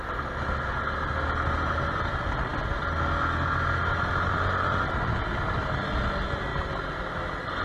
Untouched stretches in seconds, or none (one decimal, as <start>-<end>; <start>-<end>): 0.0-7.6